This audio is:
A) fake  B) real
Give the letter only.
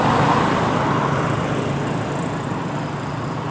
B